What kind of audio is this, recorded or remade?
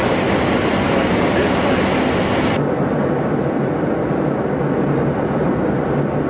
recorded